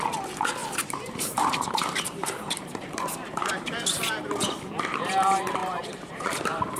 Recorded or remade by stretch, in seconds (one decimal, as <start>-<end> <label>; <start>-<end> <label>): 0.0-0.6 recorded; 0.6-3.7 remade; 3.7-5.6 recorded; 5.6-6.8 remade